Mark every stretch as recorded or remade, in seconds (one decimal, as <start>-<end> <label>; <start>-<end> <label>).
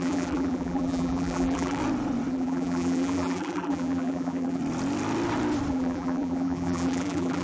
0.0-1.8 remade; 1.8-2.3 recorded; 2.3-4.6 remade; 4.6-5.7 recorded; 5.7-7.4 remade